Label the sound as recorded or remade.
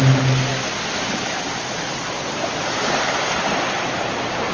recorded